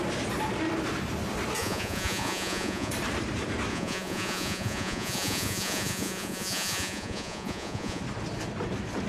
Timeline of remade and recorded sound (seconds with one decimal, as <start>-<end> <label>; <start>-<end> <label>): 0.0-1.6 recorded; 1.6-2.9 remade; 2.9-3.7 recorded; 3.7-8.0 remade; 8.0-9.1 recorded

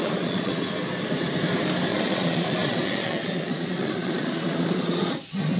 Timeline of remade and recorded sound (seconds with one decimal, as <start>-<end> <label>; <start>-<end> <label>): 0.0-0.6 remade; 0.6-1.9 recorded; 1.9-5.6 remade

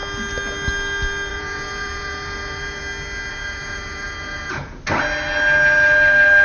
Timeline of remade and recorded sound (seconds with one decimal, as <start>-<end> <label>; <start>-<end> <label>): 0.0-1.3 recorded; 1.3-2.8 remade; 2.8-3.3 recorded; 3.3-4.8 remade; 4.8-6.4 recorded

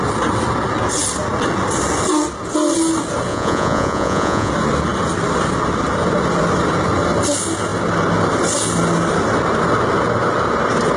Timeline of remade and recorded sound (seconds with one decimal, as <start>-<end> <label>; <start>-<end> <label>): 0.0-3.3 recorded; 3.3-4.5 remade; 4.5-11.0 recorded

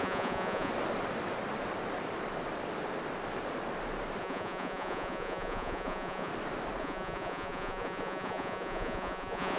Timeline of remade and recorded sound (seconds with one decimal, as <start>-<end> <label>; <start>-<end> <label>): 0.0-0.7 remade; 0.7-4.2 recorded; 4.2-6.3 remade; 6.3-6.8 recorded; 6.8-9.6 remade